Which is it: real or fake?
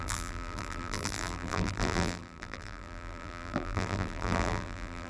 fake